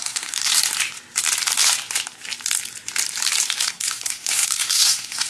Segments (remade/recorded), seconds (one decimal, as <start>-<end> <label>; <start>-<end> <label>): 0.0-0.5 remade; 0.5-3.7 recorded; 3.7-5.3 remade